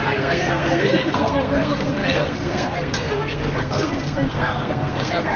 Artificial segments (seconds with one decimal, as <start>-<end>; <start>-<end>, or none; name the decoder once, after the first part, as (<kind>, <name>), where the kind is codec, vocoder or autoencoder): 0.0-5.4 (codec, SNAC)